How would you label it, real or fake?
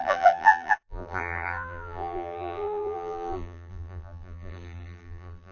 fake